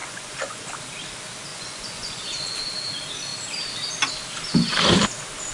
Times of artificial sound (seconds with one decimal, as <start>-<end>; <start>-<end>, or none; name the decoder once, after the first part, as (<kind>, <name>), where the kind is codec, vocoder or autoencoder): 0.0-0.7 (vocoder, Vocos); 1.5-2.6